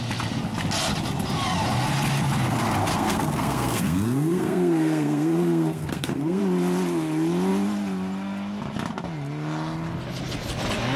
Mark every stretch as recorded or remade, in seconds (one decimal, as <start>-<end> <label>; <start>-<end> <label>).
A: 0.0-2.9 recorded; 2.9-6.4 remade; 6.4-11.0 recorded